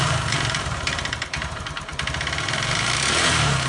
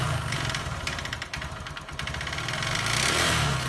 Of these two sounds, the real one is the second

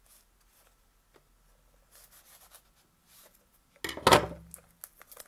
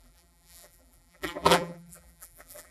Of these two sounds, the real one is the first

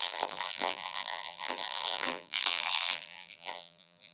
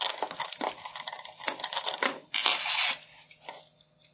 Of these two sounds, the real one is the second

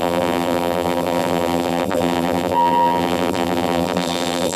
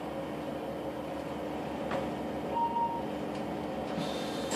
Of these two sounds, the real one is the second